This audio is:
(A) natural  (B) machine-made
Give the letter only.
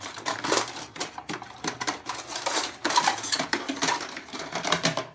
B